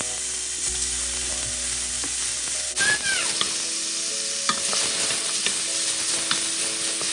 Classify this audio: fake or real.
real